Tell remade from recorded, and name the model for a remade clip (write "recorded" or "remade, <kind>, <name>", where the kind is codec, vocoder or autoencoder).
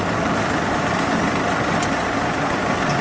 recorded